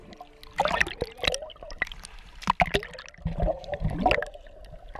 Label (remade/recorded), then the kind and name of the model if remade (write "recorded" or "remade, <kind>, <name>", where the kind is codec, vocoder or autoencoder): recorded